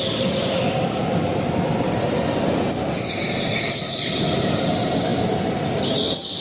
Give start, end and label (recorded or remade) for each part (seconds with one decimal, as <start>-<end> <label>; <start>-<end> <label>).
0.0-6.4 recorded